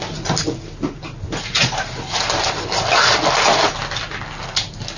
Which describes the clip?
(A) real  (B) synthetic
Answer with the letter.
A